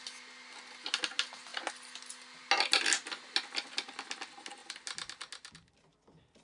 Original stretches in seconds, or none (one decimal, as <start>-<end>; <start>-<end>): 0.0-6.4